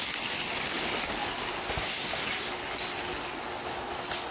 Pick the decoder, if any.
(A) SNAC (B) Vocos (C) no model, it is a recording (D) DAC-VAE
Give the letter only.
C